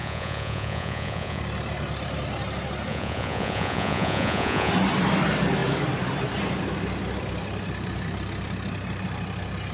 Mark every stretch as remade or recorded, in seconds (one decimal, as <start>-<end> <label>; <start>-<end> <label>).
0.0-1.4 remade; 1.4-2.9 recorded; 2.9-4.7 remade; 4.7-9.7 recorded